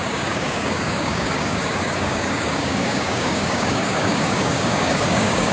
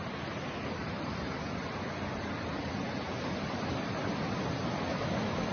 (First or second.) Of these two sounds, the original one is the second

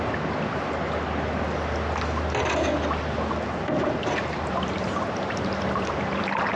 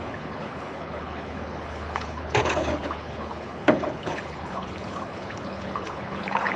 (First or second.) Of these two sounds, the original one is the first